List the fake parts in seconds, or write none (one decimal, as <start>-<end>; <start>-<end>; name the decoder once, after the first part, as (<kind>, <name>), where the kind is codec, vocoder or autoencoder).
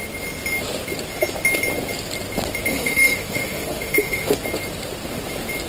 2.7-4.3 (autoencoder, DAC-VAE)